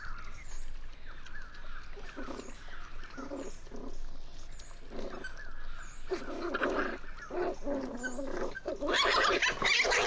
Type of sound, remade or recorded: recorded